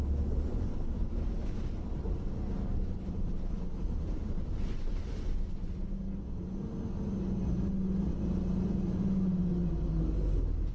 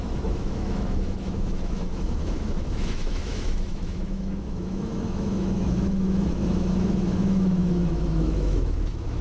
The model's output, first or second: second